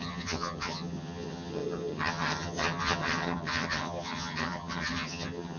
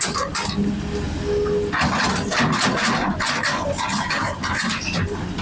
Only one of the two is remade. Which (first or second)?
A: first